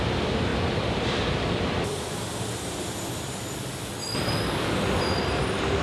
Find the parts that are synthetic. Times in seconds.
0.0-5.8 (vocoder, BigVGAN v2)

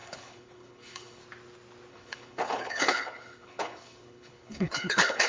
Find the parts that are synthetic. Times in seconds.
0.0-1.2 (codec, HILCodec); 1.9-5.3

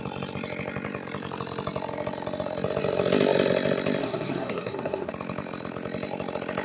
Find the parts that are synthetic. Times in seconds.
4.0-5.1 (codec, SNAC)

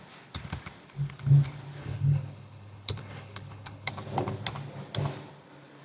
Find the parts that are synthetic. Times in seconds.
1.8-3.9 (codec, HILCodec)